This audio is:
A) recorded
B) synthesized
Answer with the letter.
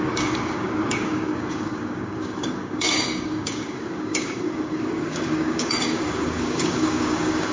B